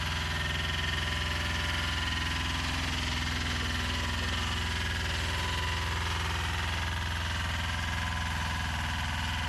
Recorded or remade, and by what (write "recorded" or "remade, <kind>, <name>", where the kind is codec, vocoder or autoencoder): recorded